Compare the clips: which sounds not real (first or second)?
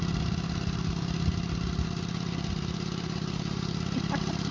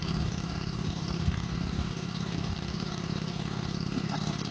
second